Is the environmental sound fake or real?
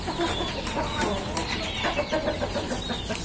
real